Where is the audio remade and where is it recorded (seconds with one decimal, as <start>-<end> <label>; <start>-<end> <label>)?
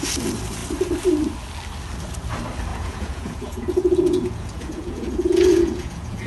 0.0-2.7 recorded; 2.7-6.3 remade